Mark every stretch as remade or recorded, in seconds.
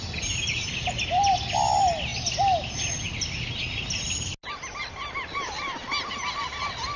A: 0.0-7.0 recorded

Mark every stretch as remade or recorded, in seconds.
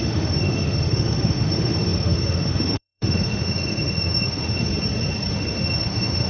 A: 0.0-4.7 remade; 4.7-5.3 recorded; 5.3-6.3 remade